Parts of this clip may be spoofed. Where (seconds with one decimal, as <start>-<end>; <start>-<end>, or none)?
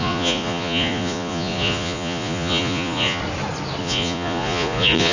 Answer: 0.0-3.2; 3.8-5.1